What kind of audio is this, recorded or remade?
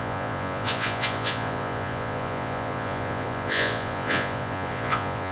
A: remade